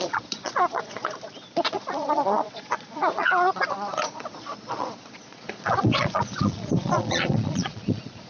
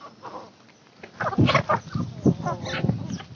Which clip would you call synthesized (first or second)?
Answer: first